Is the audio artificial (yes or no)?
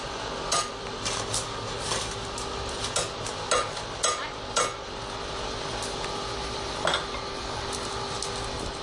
no